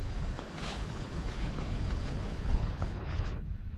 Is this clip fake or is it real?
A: fake